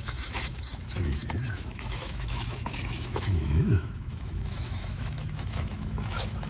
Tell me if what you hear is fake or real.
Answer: fake